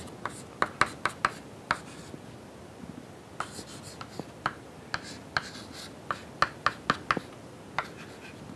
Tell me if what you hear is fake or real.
real